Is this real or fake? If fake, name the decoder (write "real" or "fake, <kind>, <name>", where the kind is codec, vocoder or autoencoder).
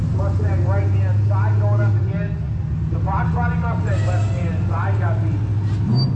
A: real